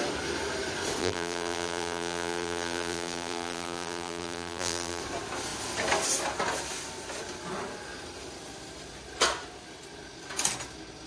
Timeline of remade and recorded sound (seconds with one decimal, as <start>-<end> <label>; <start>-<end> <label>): 0.0-1.0 recorded; 1.0-5.0 remade; 5.0-11.1 recorded